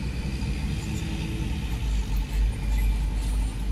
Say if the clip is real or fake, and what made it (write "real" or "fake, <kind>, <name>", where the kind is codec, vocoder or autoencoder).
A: real